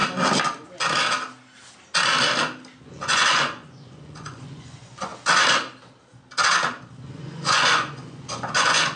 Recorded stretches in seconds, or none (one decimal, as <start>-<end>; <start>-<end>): 0.0-2.8; 5.1-7.0